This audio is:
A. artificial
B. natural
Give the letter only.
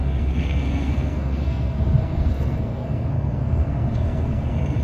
A